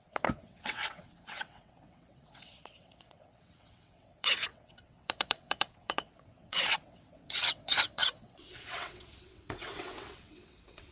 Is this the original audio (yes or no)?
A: no